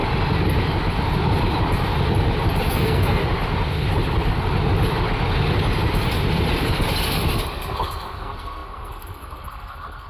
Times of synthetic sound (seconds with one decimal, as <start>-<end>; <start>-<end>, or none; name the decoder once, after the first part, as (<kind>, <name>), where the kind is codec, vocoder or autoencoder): 2.7-3.2 (codec, SNAC); 7.7-10.1